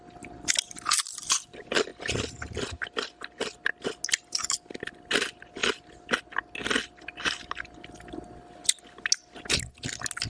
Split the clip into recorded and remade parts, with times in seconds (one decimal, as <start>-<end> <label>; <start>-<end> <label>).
0.0-10.3 recorded